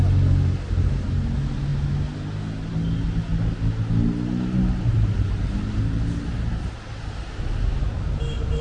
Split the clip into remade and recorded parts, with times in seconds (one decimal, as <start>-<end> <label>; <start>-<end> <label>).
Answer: 0.0-8.6 recorded